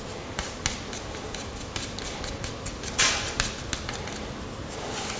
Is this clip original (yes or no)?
yes